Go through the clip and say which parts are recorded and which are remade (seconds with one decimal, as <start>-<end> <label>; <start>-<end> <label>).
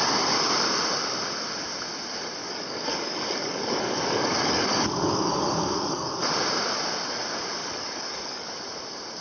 0.0-2.4 recorded; 2.4-6.3 remade; 6.3-7.6 recorded; 7.6-8.5 remade; 8.5-9.2 recorded